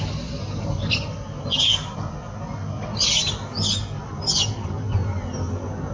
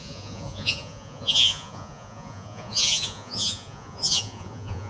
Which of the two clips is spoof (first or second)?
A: second